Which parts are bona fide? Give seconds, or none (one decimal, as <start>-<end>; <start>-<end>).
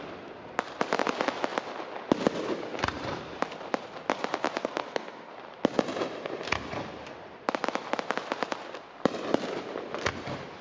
0.0-4.6; 5.3-10.6